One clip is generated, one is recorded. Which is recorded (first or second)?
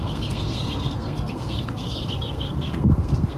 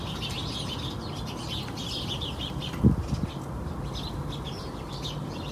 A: second